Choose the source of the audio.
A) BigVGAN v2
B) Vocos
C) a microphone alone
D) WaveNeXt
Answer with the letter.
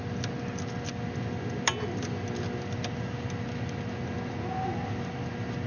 C